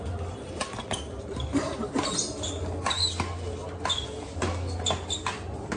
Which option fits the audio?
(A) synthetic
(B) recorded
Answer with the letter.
B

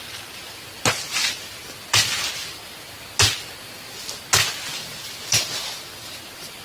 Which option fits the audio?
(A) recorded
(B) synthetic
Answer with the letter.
A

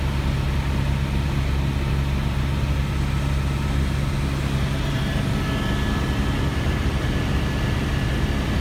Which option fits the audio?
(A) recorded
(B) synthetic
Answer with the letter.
A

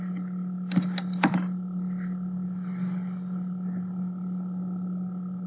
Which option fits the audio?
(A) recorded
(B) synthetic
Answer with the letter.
A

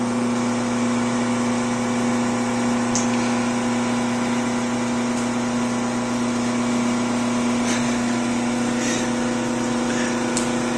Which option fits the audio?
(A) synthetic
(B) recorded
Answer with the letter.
B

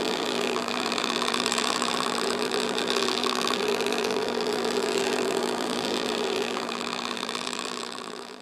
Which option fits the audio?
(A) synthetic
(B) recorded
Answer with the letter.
A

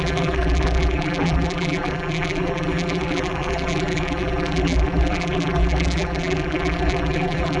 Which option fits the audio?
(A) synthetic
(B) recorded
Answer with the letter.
A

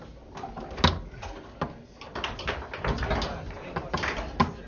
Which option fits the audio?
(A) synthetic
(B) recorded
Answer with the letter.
B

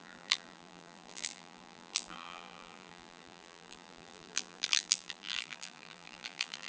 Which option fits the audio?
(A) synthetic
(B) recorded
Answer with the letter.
A